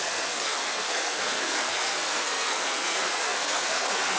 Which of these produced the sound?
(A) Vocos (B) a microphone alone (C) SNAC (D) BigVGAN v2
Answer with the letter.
C